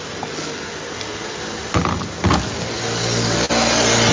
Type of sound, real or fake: real